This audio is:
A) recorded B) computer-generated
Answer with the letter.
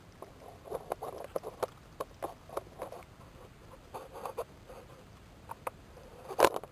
A